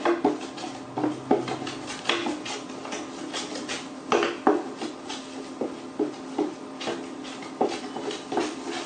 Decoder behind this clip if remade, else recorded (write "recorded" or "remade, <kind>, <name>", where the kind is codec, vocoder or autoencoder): recorded